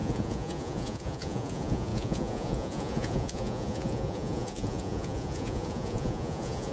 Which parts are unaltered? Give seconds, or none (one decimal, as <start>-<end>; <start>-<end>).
none